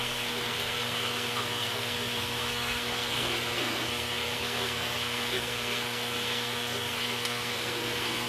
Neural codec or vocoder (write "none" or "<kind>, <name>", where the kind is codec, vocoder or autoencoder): codec, SNAC